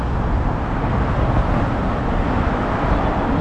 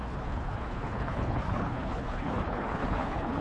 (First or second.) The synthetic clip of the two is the second